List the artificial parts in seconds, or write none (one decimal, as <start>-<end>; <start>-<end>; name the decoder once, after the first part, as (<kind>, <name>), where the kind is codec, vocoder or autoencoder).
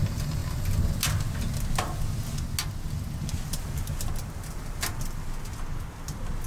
none